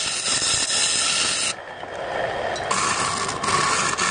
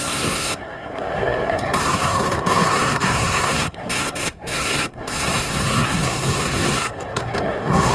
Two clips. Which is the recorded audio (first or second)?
first